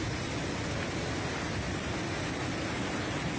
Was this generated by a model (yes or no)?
no